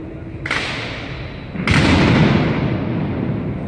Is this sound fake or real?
real